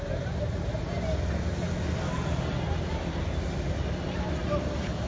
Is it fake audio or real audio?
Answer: real